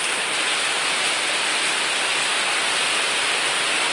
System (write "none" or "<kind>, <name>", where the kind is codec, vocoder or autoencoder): none